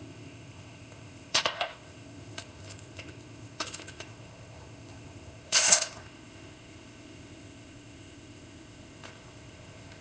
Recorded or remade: remade